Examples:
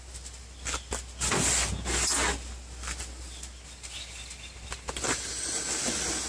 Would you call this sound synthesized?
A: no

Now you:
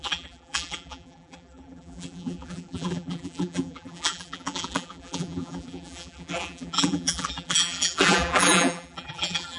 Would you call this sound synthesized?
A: yes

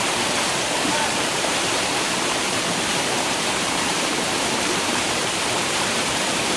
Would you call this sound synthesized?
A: yes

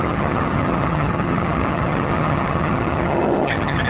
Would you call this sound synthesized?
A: yes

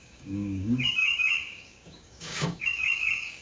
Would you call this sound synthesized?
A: yes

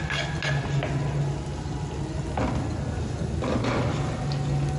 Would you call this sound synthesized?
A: no